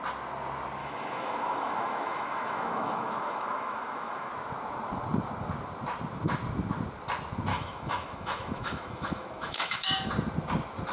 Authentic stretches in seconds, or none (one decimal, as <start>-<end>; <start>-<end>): 0.0-0.8; 4.3-7.5; 10.1-10.9